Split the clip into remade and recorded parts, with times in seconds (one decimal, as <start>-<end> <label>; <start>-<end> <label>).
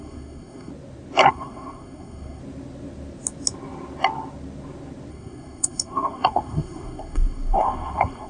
0.0-0.7 remade; 0.7-1.3 recorded; 1.3-2.4 remade; 2.4-5.1 recorded; 5.1-8.3 remade